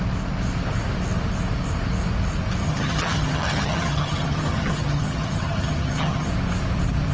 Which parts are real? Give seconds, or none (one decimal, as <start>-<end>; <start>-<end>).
0.0-2.6; 6.3-7.1